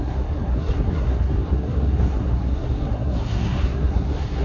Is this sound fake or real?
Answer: fake